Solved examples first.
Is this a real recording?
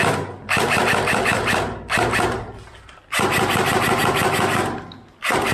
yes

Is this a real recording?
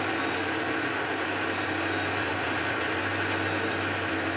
yes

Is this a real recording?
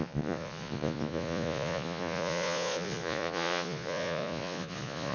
no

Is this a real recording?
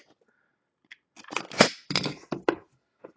yes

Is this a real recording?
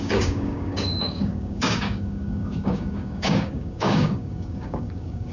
no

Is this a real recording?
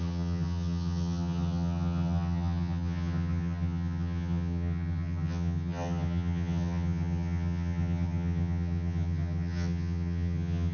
no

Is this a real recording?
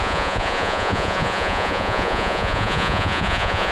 no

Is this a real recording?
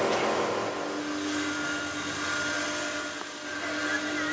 yes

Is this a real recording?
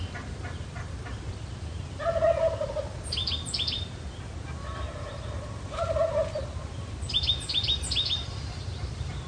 yes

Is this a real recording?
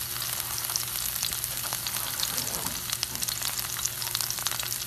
yes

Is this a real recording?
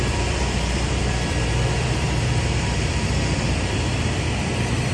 no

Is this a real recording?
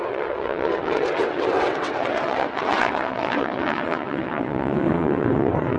no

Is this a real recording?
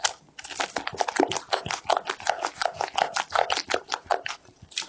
yes